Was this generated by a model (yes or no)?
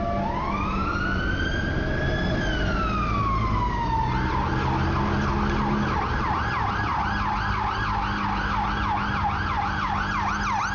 no